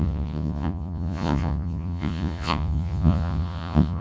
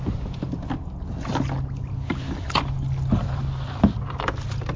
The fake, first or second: first